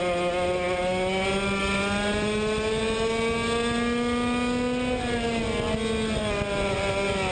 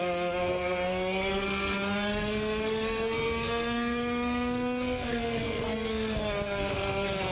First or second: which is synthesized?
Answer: second